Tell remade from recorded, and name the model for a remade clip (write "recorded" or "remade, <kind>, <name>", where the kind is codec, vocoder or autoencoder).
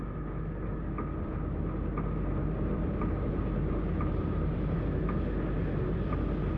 recorded